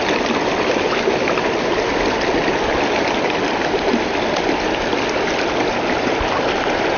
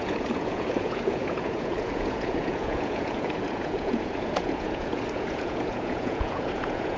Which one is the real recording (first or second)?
first